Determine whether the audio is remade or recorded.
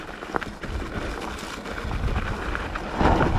recorded